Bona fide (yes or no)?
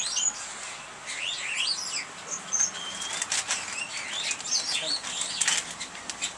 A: yes